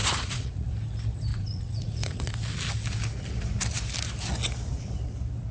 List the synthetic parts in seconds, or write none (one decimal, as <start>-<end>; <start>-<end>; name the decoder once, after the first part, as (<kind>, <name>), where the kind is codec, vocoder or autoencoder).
0.0-0.7 (vocoder, Vocos); 1.3-2.3